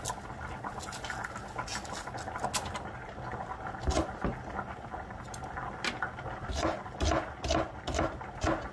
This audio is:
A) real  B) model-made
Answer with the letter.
A